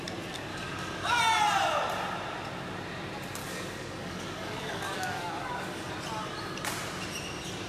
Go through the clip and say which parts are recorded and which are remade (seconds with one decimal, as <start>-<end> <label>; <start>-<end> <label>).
0.0-0.5 recorded; 0.5-1.2 remade; 1.2-3.4 recorded; 3.4-5.9 remade; 5.9-7.7 recorded